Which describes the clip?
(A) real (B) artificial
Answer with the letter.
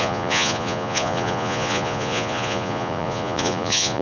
B